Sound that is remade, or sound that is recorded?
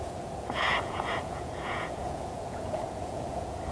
remade